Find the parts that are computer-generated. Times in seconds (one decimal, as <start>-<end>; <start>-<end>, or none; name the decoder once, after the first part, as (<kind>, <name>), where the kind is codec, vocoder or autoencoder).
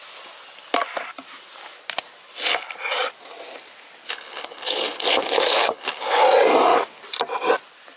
4.1-6.2 (codec, HILCodec)